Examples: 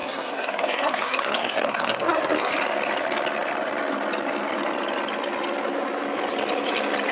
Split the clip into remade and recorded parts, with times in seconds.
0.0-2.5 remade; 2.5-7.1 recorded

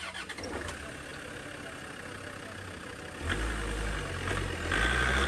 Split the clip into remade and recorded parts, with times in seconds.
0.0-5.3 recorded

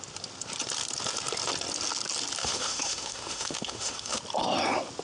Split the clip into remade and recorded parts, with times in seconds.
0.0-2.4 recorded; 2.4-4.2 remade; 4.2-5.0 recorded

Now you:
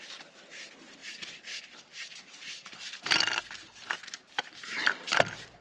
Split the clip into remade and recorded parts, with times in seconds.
0.0-1.0 recorded; 1.0-3.2 remade; 3.2-4.2 recorded; 4.2-5.6 remade

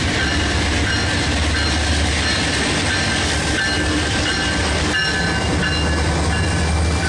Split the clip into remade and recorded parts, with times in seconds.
0.0-7.1 recorded